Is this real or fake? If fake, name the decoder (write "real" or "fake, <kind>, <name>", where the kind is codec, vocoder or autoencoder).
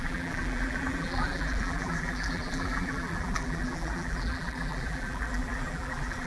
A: fake, vocoder, BigVGAN v2